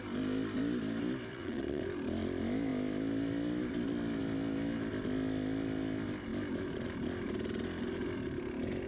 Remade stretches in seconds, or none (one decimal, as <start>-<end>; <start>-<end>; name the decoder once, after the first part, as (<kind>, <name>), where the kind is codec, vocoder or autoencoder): 1.3-1.8 (vocoder, Vocos)